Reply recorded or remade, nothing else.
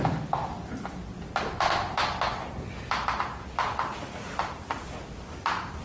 recorded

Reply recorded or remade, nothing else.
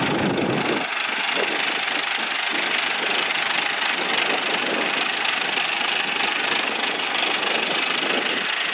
recorded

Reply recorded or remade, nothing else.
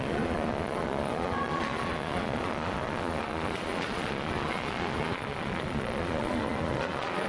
remade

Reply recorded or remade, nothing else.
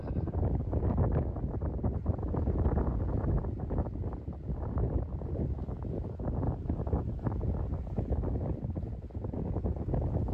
recorded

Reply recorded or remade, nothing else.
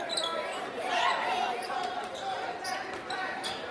recorded